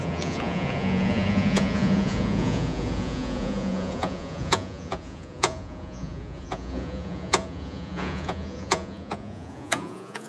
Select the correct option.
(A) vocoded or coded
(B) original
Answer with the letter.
A